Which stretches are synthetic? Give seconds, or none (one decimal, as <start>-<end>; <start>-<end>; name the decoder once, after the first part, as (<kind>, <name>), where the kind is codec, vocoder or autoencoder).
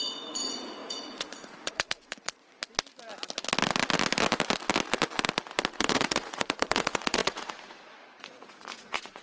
0.0-2.6 (vocoder, Vocos); 5.7-9.2